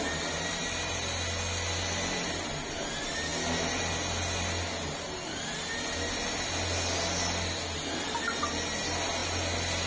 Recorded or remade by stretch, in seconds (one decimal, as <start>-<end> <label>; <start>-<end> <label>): 0.0-9.9 recorded